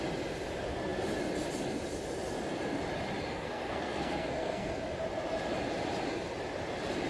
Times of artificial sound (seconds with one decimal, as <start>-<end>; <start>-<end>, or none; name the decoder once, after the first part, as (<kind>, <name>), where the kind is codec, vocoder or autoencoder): 3.3-4.7 (codec, SNAC)